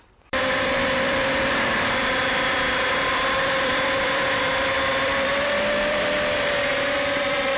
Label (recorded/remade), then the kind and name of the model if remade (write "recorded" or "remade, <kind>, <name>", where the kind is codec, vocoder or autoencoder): remade, vocoder, BigVGAN v2